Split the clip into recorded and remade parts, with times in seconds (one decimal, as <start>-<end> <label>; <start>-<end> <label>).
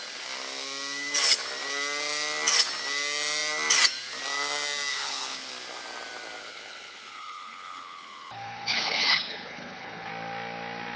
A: 0.0-4.9 recorded; 4.9-5.5 remade; 5.5-6.4 recorded; 6.4-10.1 remade; 10.1-11.0 recorded